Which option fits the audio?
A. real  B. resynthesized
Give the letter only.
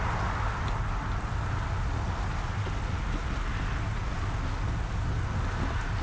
A